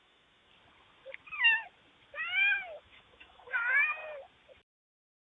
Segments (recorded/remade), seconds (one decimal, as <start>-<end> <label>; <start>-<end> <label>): 0.0-0.5 remade; 0.5-2.8 recorded; 2.8-4.0 remade; 4.0-4.8 recorded; 4.8-5.2 remade